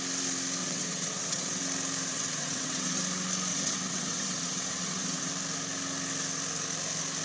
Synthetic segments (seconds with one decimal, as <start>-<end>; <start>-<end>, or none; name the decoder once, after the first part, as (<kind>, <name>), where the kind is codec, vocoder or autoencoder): 0.6-1.6 (vocoder, WaveNeXt); 2.1-3.0; 3.5-5.3